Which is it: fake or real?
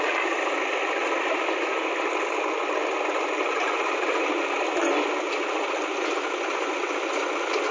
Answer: real